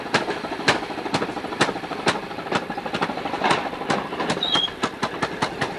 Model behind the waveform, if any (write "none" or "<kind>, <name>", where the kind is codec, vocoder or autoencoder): vocoder, BigVGAN v2